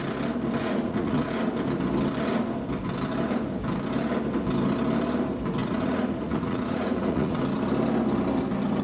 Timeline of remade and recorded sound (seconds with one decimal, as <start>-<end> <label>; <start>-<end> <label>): 0.0-0.6 recorded; 0.6-1.4 remade; 1.4-5.6 recorded; 5.6-7.4 remade; 7.4-8.8 recorded

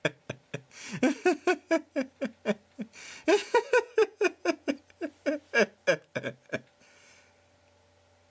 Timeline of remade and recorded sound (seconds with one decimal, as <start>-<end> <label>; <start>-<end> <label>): 0.0-3.4 recorded; 3.4-4.8 remade; 4.8-8.3 recorded

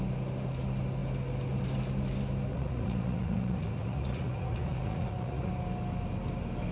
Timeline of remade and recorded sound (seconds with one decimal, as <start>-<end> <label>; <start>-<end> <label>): 0.0-2.5 recorded; 2.5-5.5 remade; 5.5-6.7 recorded

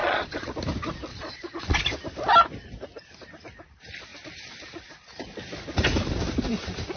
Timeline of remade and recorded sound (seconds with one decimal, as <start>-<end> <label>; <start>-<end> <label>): 0.0-0.5 remade; 0.5-1.1 recorded; 1.1-1.8 remade; 1.8-7.0 recorded

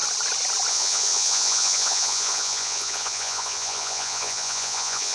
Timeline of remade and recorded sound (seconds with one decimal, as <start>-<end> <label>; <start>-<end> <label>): 0.0-0.7 recorded; 0.7-5.1 remade